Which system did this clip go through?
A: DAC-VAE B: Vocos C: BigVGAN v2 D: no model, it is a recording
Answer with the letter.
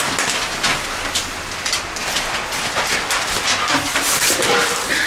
D